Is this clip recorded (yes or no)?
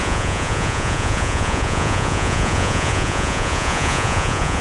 no